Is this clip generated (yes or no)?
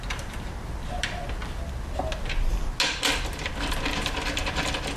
no